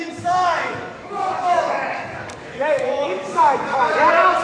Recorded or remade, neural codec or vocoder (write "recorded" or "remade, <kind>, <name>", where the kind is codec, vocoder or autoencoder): remade, codec, DAC